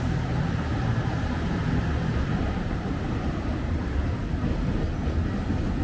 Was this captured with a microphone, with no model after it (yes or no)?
no